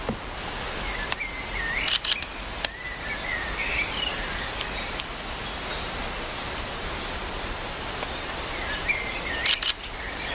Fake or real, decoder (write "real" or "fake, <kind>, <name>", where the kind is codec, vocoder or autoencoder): real